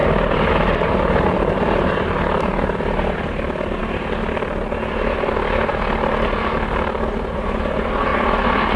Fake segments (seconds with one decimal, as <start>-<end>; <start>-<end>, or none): 0.0-1.5